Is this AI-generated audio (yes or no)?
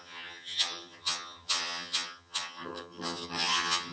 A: yes